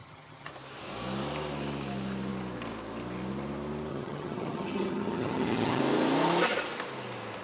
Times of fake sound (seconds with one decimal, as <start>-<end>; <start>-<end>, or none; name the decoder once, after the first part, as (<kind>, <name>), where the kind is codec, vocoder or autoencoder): 0.0-0.5 (vocoder, HiFi-GAN); 3.9-5.8